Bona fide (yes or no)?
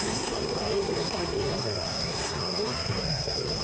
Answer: no